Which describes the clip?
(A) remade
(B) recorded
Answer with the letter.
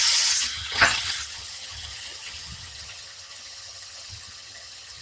A